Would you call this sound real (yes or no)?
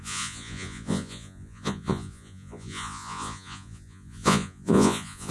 no